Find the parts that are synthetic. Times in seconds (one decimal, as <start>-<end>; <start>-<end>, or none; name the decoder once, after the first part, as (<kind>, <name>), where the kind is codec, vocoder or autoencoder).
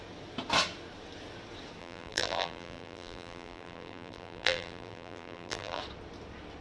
1.8-5.8 (vocoder, BigVGAN v2)